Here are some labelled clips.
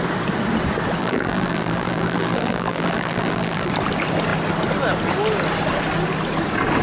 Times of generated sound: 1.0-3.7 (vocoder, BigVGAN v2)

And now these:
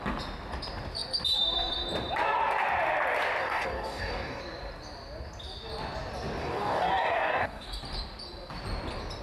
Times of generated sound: 3.4-4.4 (codec, DAC); 6.4-7.8

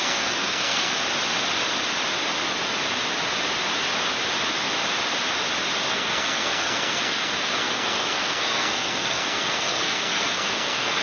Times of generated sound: 0.0-1.0 (codec, SNAC); 5.9-11.0

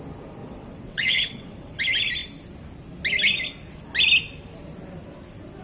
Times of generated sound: 0.4-1.8 (vocoder, WaveNeXt)

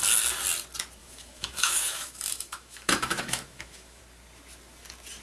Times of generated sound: 1.0-4.0 (autoencoder, DAC-VAE)

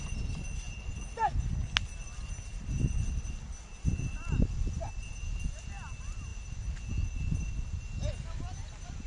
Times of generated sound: none

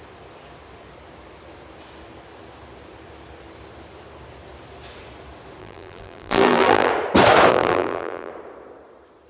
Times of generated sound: 5.6-6.9 (vocoder, BigVGAN v2); 7.5-8.3

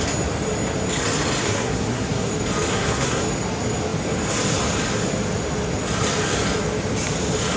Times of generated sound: 1.4-2.3 (codec, SNAC); 2.7-3.2